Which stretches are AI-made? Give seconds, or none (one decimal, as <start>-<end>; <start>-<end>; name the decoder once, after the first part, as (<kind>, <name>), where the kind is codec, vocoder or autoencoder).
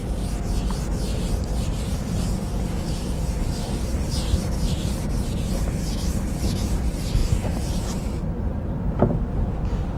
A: 1.1-2.2 (vocoder, BigVGAN v2); 7.2-9.0